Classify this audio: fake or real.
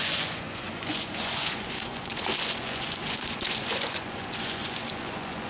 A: fake